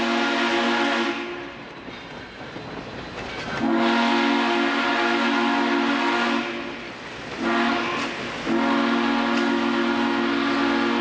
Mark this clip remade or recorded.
recorded